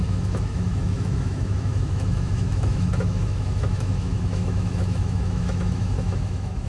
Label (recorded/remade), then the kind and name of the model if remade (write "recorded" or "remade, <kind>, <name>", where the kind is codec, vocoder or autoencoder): remade, autoencoder, DAC-VAE